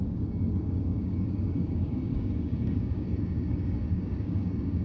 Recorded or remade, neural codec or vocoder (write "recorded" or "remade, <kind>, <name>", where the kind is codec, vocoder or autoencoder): remade, codec, DAC